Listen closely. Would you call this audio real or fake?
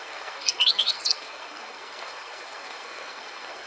fake